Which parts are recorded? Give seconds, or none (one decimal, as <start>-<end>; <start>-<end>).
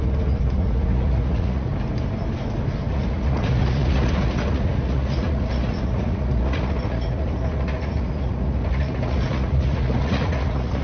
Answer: 1.7-2.9